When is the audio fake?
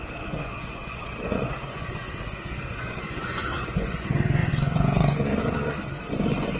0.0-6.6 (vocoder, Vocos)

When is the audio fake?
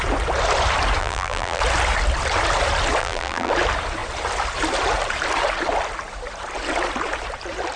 1.0-1.6 (vocoder, BigVGAN v2); 3.0-3.5